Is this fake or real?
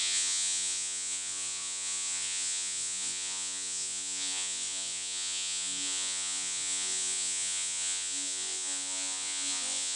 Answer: fake